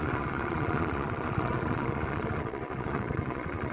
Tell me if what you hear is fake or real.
fake